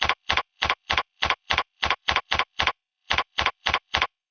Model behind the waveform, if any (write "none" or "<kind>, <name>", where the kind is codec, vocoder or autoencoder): vocoder, BigVGAN v2